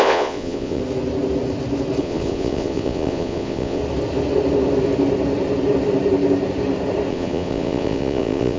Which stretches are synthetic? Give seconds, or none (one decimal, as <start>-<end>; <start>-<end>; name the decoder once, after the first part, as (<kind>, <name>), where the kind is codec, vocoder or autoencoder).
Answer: 0.0-0.8 (vocoder, Vocos); 2.0-3.8; 7.1-8.6